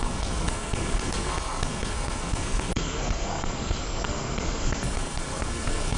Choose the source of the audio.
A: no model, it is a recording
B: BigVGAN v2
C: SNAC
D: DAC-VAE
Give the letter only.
C